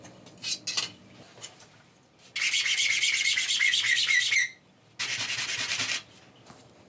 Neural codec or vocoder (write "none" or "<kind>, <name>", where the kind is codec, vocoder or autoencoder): none